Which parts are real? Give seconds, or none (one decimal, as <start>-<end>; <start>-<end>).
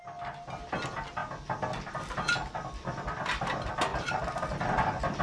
0.0-5.2